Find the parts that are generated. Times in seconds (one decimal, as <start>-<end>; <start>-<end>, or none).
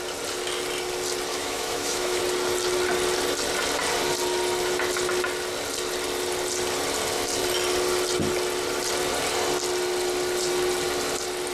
1.3-2.2